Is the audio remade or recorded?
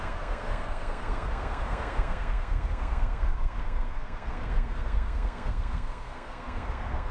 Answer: remade